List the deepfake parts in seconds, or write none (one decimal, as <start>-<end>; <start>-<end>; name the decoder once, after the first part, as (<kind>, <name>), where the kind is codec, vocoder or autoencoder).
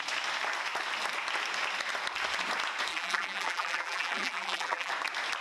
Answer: 2.9-4.9 (vocoder, BigVGAN v2)